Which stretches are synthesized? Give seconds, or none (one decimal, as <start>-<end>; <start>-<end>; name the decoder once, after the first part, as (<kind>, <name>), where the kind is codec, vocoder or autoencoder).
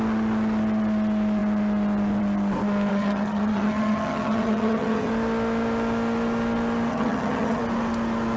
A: 2.9-5.1 (vocoder, HiFi-GAN); 6.9-7.6